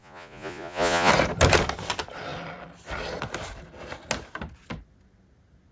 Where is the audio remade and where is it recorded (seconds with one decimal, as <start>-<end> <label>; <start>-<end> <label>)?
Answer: 0.0-1.1 remade; 1.1-5.7 recorded